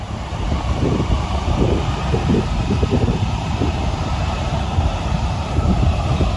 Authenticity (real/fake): fake